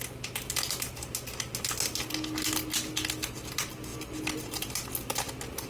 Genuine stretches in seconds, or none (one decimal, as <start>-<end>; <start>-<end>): 0.0-5.7